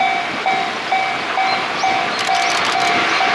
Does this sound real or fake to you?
real